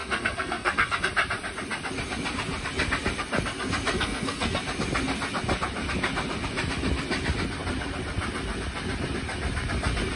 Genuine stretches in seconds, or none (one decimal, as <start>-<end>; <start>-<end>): 1.0-3.9; 4.6-10.2